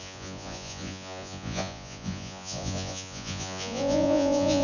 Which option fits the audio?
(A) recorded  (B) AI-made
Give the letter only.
B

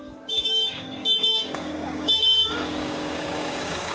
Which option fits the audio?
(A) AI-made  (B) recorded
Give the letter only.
A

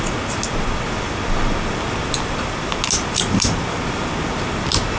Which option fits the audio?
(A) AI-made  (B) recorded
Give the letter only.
B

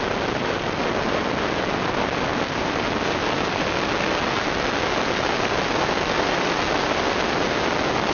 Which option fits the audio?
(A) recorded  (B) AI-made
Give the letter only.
A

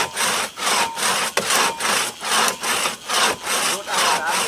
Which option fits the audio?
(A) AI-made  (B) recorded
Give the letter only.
B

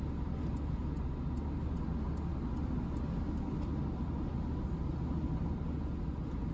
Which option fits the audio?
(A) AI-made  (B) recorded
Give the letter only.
B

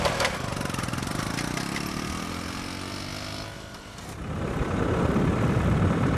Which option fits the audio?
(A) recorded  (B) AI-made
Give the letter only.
A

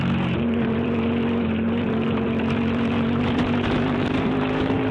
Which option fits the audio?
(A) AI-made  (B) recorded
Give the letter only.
A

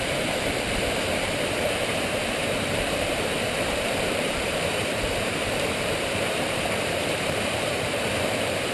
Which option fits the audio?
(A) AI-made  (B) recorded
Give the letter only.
A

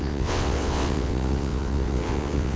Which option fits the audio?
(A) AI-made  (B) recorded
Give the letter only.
A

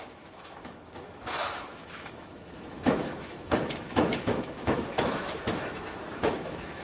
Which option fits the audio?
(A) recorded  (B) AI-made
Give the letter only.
B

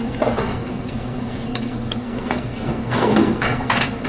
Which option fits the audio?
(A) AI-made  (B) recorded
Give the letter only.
A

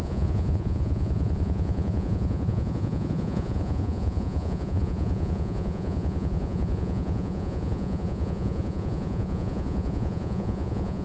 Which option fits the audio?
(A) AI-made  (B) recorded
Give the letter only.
A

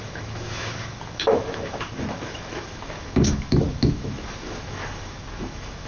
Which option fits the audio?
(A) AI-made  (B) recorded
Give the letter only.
A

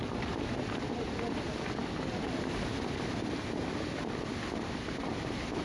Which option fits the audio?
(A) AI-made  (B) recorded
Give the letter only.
B